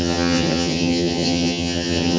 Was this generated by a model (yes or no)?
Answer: yes